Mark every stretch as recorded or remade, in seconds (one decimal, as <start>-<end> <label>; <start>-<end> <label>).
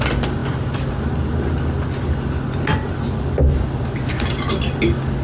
0.0-5.2 recorded